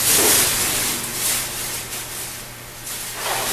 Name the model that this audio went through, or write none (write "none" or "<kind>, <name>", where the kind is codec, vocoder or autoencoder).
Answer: none